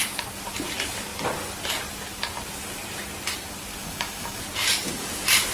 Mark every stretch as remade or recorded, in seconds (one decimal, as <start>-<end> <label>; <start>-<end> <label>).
0.0-3.8 recorded; 3.8-4.4 remade; 4.4-5.5 recorded